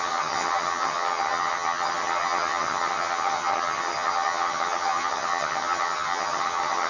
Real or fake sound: fake